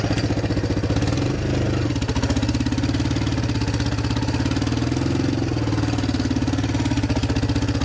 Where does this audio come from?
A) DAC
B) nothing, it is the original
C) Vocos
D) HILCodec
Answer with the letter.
B